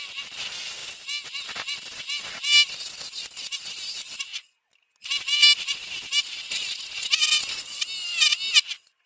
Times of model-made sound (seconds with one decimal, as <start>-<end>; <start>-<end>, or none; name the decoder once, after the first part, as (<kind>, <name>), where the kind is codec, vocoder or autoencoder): none